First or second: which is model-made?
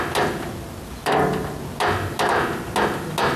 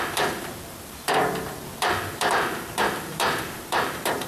second